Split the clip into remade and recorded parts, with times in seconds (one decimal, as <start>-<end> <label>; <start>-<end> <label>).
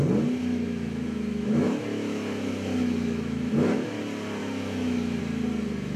0.0-0.4 recorded; 0.4-4.0 remade; 4.0-4.4 recorded; 4.4-5.2 remade; 5.2-6.0 recorded